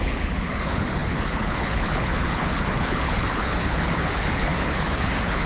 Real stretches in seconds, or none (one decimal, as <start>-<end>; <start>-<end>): none